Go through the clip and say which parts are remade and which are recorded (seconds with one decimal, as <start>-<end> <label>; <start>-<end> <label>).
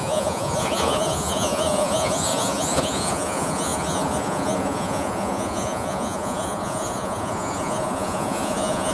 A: 0.0-8.9 remade